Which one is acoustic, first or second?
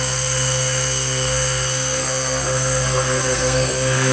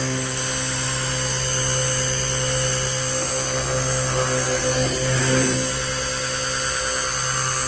second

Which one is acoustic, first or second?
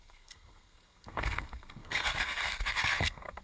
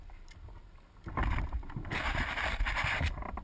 second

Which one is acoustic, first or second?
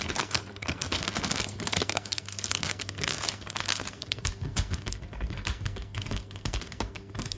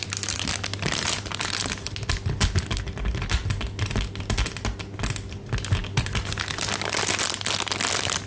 second